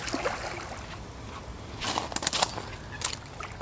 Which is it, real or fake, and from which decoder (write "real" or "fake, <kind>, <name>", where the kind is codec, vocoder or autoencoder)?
real